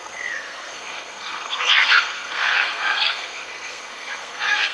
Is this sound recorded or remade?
remade